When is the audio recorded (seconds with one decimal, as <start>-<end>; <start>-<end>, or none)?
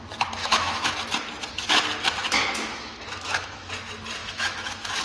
0.0-0.4; 0.9-2.2; 3.7-4.2